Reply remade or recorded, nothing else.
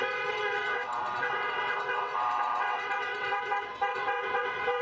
remade